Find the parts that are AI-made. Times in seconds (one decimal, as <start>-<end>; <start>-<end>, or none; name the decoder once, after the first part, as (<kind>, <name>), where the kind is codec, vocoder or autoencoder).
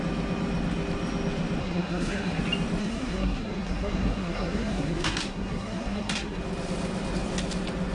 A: 1.6-2.4 (codec, SNAC); 2.8-6.4